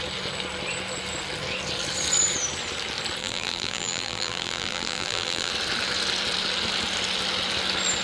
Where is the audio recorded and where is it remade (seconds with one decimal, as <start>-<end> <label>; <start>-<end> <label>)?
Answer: 0.0-3.2 recorded; 3.2-5.5 remade; 5.5-8.0 recorded